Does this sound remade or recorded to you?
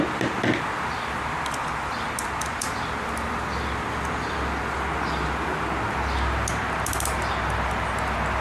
recorded